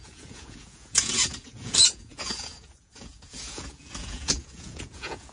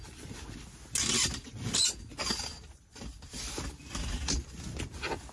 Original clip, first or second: second